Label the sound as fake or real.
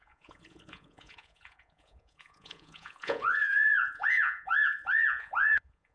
fake